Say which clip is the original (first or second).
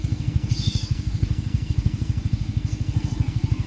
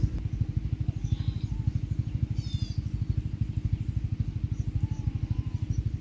second